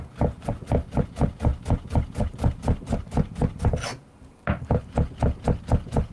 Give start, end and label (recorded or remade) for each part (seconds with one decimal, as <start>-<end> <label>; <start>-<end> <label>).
0.0-6.1 recorded